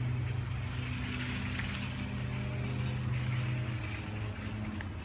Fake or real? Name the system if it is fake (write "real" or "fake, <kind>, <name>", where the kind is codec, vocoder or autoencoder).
real